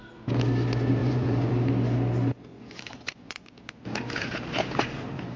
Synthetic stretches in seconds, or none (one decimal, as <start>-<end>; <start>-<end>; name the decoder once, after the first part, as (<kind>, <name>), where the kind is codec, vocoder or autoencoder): 1.0-1.5 (vocoder, Vocos); 2.5-3.4